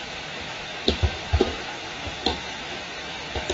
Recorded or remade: remade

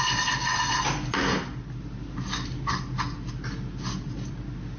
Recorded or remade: recorded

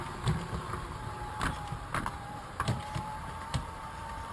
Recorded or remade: remade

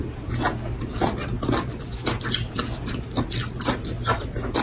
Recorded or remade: recorded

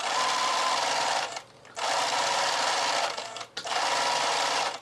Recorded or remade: recorded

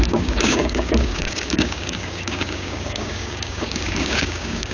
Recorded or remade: remade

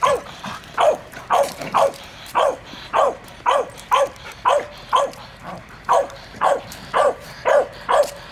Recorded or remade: remade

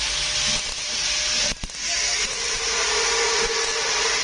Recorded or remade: recorded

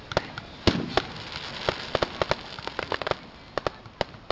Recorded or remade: recorded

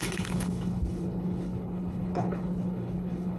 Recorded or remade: remade